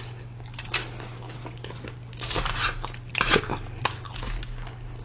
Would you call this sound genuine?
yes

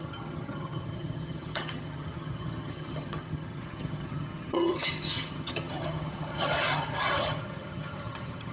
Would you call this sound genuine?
no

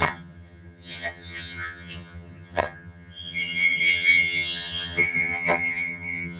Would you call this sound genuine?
no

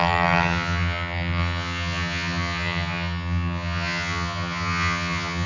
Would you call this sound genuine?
no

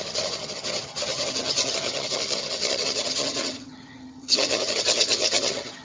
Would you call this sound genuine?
no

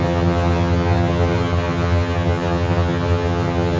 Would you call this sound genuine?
no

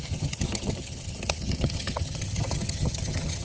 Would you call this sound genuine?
no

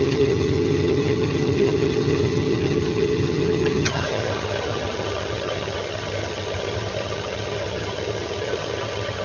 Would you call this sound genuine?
no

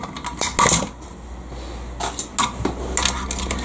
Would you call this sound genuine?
yes